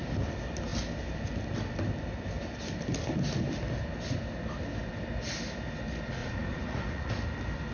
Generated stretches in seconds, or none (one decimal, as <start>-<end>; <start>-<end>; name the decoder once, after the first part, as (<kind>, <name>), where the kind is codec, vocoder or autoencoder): 6.2-7.1 (vocoder, Vocos)